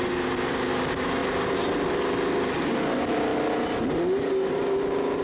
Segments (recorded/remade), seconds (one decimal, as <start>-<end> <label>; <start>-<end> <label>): 0.0-5.2 recorded